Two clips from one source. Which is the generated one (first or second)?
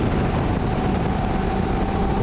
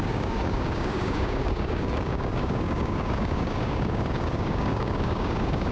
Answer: second